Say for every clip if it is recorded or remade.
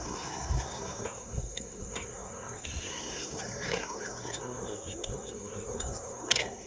remade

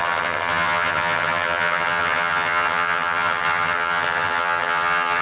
remade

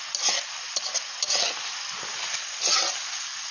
recorded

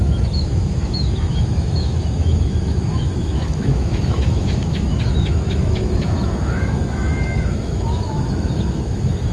remade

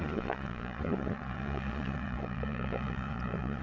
remade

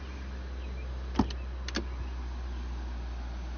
recorded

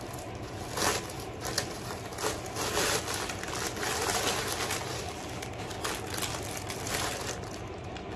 recorded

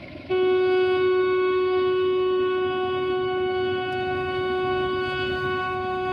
remade